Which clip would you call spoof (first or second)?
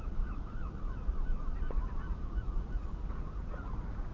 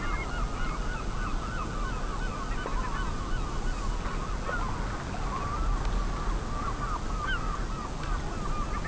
first